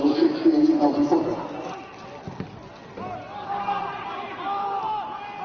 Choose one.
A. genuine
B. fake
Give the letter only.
A